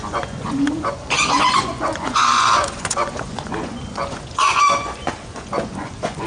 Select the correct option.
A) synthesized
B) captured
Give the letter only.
A